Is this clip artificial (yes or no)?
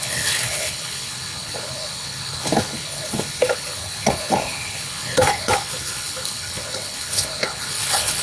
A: yes